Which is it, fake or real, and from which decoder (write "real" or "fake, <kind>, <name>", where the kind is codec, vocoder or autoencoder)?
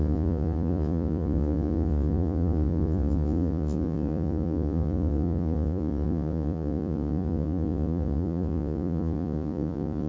fake, vocoder, Vocos